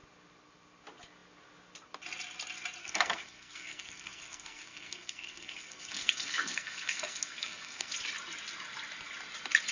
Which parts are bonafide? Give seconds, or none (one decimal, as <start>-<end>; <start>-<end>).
0.0-2.8; 7.9-9.7